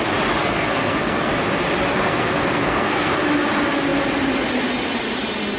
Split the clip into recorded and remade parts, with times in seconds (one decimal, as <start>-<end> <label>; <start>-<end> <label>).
0.0-0.4 recorded; 0.4-1.3 remade; 1.3-1.9 recorded; 1.9-3.1 remade; 3.1-5.6 recorded